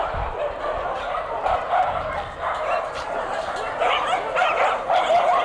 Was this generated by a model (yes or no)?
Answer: yes